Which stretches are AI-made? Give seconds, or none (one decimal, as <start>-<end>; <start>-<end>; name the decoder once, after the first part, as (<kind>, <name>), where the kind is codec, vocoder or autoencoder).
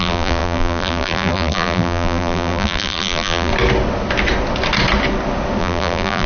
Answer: 0.0-3.5 (vocoder, BigVGAN v2); 5.6-6.3